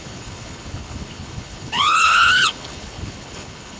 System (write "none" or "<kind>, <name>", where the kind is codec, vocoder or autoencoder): codec, HILCodec